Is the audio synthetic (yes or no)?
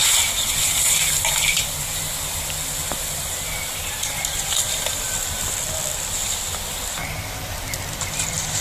yes